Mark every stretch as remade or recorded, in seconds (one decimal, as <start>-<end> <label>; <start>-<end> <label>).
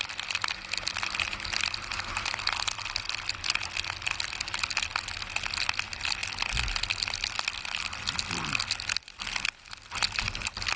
0.0-10.8 recorded